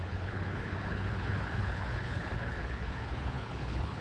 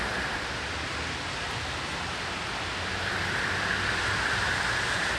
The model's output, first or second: first